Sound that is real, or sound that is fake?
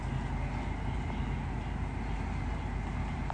real